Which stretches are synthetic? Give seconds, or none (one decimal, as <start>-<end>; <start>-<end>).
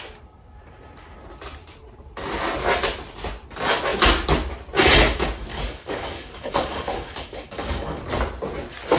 5.5-8.0